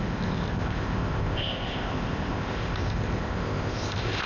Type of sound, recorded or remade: remade